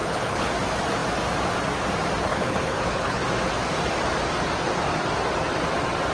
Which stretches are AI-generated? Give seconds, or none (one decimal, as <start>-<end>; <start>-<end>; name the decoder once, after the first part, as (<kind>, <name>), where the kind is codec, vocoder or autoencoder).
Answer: 0.0-0.5 (codec, HILCodec); 2.3-3.2